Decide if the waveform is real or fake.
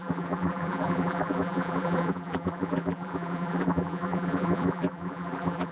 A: fake